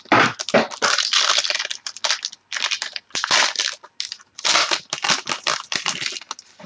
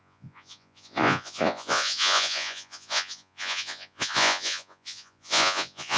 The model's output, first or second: second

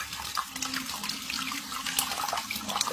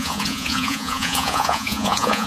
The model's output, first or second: second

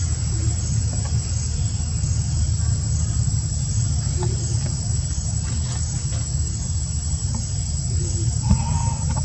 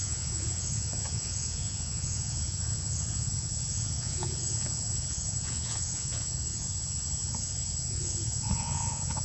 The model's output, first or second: second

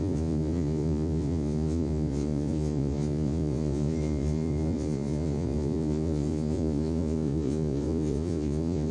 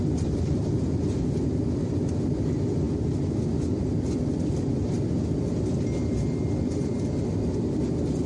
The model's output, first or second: first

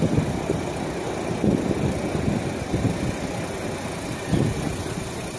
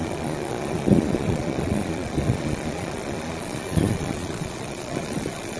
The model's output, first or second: second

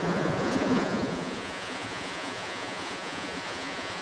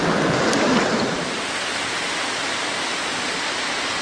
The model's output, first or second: first